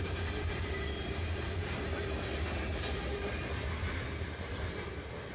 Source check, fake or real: real